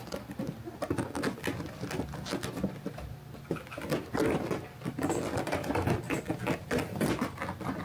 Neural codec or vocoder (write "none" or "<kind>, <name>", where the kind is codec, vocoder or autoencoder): none